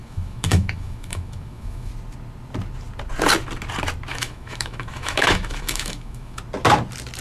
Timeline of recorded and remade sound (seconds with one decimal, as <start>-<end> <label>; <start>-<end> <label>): 0.0-1.9 remade; 1.9-4.1 recorded; 4.1-6.4 remade; 6.4-7.2 recorded